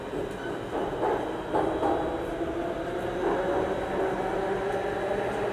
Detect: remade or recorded recorded